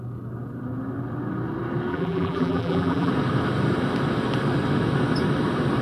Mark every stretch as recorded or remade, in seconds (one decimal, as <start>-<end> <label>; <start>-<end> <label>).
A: 0.0-1.9 recorded; 1.9-3.1 remade; 3.1-5.8 recorded